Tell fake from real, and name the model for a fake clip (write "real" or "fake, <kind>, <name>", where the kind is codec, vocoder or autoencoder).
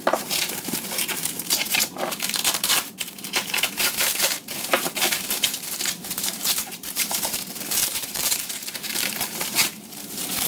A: fake, vocoder, BigVGAN v2